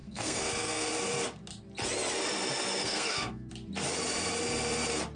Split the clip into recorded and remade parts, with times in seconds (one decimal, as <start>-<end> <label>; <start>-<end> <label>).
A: 0.0-0.9 remade; 0.9-2.8 recorded; 2.8-3.5 remade; 3.5-5.2 recorded

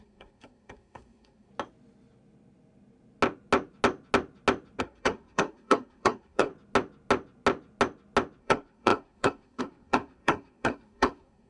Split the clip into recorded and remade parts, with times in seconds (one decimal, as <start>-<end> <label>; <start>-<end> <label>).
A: 0.0-1.5 remade; 1.5-4.8 recorded; 4.8-6.5 remade; 6.5-8.4 recorded; 8.4-11.5 remade